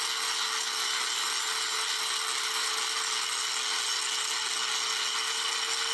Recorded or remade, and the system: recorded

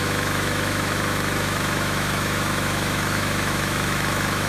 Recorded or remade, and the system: remade, autoencoder, DAC-VAE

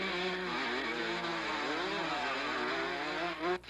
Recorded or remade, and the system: recorded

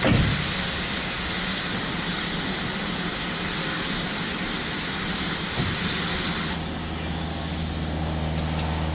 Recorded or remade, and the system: recorded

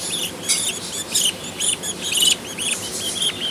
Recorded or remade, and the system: recorded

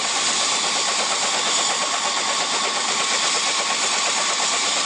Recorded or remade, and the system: recorded